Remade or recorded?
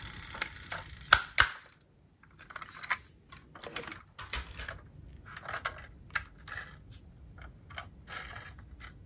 recorded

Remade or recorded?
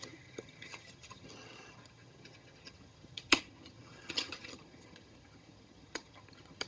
remade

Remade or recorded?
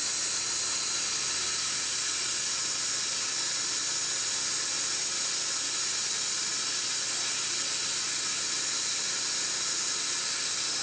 recorded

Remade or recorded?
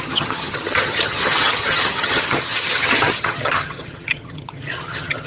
remade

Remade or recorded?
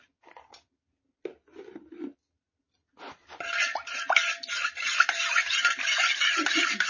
recorded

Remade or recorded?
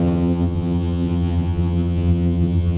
remade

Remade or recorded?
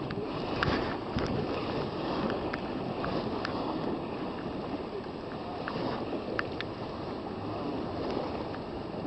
recorded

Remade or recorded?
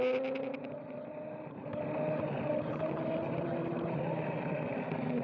recorded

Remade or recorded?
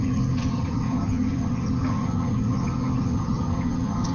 remade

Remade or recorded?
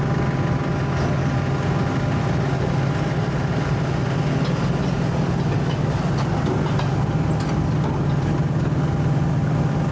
recorded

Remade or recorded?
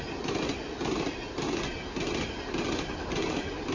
recorded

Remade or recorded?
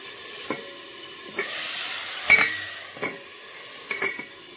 recorded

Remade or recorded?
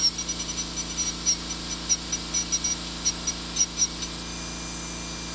recorded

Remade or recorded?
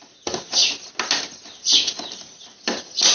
recorded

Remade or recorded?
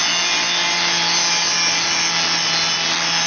recorded